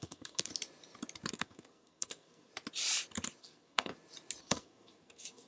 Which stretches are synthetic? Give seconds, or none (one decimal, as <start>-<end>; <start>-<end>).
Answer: 0.0-0.5; 1.3-2.5; 3.4-3.9; 4.4-5.5